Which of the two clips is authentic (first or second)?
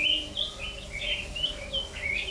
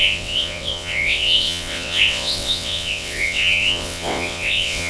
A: first